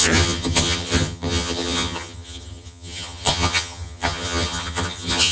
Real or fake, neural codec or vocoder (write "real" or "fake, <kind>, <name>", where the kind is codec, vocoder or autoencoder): fake, vocoder, HiFi-GAN